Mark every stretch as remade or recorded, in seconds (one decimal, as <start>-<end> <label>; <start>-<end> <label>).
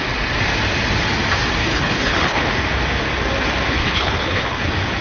0.0-1.6 recorded; 1.6-2.5 remade; 2.5-3.8 recorded; 3.8-4.6 remade; 4.6-5.0 recorded